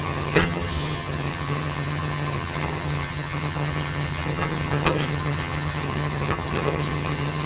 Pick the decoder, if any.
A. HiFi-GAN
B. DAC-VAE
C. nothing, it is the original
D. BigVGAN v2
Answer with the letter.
A